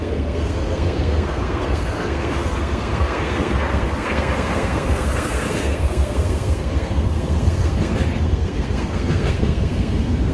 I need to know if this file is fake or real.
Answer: fake